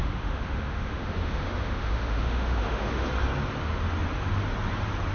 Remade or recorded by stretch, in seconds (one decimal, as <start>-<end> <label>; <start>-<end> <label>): 0.0-3.1 remade; 3.1-5.1 recorded

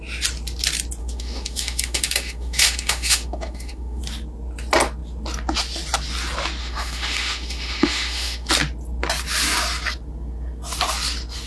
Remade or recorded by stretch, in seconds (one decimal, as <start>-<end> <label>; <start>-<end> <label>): 0.0-1.0 recorded; 1.0-4.0 remade; 4.0-6.6 recorded; 6.6-8.5 remade; 8.5-11.5 recorded

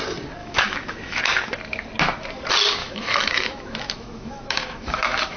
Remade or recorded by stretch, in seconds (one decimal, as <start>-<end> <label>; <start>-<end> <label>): 0.0-0.4 recorded; 0.4-1.2 remade; 1.2-2.8 recorded; 2.8-5.4 remade

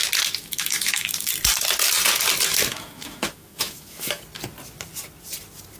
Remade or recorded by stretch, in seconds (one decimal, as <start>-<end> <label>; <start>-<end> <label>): 0.0-0.4 recorded; 0.4-1.3 remade; 1.3-2.7 recorded; 2.7-4.2 remade; 4.2-5.8 recorded

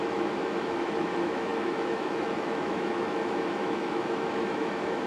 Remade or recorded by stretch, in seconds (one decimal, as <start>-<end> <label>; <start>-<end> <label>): 0.0-5.1 remade